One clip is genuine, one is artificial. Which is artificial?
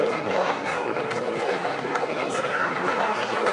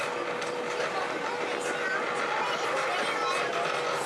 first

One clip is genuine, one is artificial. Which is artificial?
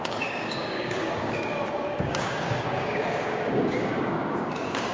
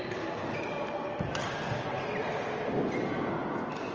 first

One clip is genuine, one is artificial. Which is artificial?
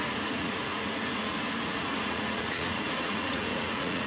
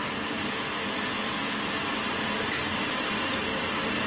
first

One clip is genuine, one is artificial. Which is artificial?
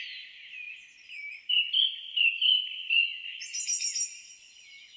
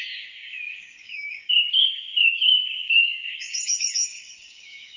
second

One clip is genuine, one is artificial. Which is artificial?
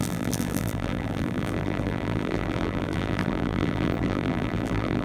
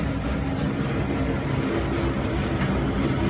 first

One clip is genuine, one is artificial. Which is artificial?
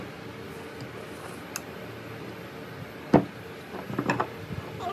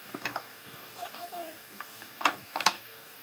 second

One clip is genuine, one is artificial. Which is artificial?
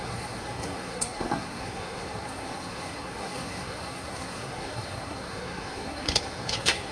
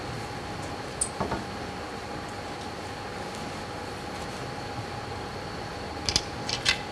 first